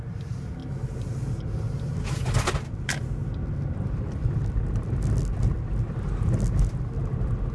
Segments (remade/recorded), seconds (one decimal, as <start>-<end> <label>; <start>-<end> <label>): 0.0-7.5 recorded